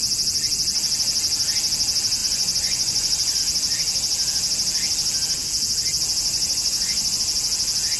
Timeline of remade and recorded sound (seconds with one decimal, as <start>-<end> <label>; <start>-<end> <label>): 0.0-2.2 recorded; 2.2-3.4 remade; 3.4-6.3 recorded; 6.3-7.2 remade; 7.2-8.0 recorded